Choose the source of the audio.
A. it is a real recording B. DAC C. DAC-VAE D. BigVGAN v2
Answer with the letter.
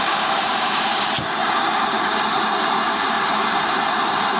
D